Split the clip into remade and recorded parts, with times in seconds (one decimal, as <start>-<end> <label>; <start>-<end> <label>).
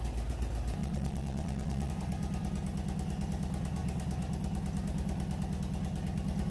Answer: 0.0-0.8 recorded; 0.8-1.9 remade; 1.9-6.5 recorded